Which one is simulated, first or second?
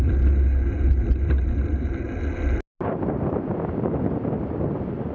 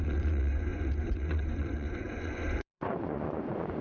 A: second